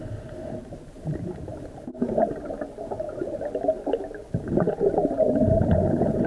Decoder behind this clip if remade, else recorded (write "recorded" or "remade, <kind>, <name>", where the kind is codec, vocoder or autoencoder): recorded